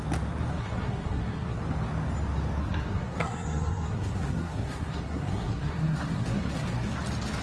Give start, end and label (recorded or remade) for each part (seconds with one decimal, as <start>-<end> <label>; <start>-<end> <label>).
0.0-0.5 recorded; 0.5-1.6 remade; 1.6-2.6 recorded; 2.6-7.0 remade; 7.0-7.4 recorded